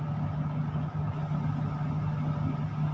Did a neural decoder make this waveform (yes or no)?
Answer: no